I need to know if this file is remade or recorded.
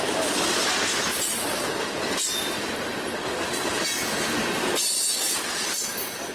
recorded